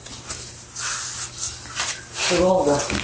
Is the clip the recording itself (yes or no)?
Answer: yes